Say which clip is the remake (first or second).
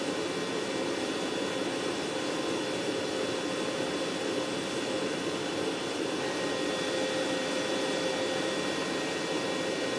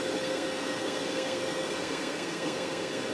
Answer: second